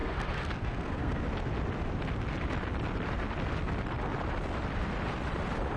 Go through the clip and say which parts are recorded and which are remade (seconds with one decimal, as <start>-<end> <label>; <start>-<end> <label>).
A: 0.0-1.2 remade; 1.2-5.8 recorded